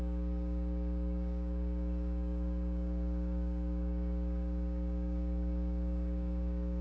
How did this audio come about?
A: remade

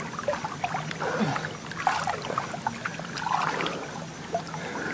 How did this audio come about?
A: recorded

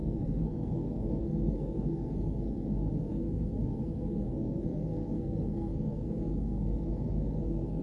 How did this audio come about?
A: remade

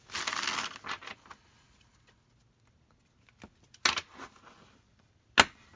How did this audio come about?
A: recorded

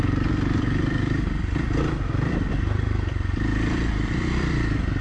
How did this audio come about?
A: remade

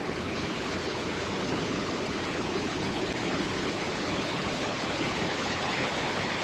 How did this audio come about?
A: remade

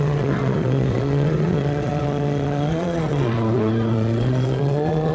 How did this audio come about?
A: remade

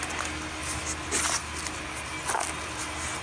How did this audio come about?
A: recorded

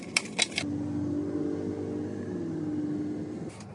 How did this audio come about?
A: recorded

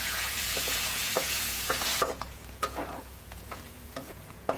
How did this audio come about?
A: remade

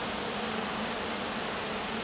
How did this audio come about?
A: recorded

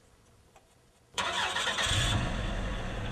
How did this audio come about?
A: remade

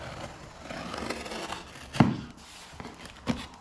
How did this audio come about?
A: recorded